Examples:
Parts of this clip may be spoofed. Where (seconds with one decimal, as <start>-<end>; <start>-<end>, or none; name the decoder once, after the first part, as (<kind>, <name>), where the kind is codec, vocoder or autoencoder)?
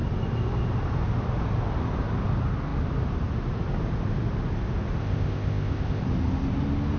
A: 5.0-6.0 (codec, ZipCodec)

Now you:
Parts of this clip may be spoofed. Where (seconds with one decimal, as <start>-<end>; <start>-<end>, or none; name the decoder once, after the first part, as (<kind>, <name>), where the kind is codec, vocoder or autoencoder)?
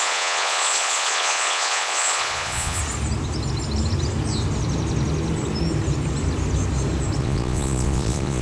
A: 0.0-2.8 (vocoder, Vocos); 7.2-8.4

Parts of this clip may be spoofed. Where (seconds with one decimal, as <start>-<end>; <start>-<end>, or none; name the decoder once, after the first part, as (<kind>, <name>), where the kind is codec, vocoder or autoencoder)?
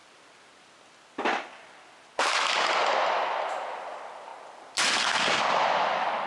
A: 3.8-4.3 (vocoder, BigVGAN v2); 5.4-6.3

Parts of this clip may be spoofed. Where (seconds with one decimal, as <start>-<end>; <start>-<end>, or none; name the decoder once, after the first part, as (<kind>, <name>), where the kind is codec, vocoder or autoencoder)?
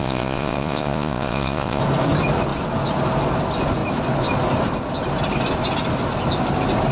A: 0.0-1.8 (vocoder, Vocos)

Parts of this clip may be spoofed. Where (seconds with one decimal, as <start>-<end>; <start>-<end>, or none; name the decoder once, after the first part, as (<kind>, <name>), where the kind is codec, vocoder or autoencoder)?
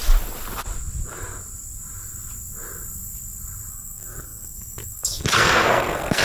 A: 3.7-6.2 (codec, SNAC)